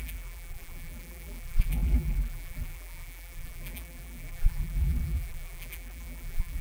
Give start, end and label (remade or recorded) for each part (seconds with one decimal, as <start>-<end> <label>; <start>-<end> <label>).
0.0-6.6 remade